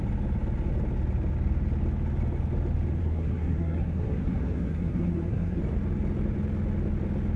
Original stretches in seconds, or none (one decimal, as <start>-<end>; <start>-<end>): 0.0-3.0; 5.6-7.4